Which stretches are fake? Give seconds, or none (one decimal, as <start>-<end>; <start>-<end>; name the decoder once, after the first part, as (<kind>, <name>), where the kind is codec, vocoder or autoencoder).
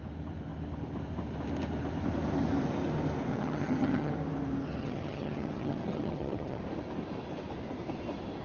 3.3-4.1 (vocoder, HiFi-GAN); 4.8-6.6